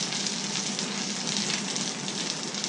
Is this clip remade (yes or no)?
no